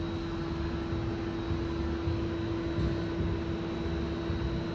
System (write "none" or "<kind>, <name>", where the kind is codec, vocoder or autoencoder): none